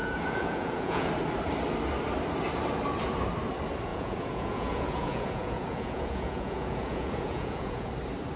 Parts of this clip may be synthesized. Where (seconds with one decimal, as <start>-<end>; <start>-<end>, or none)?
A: 0.0-1.1; 3.9-7.9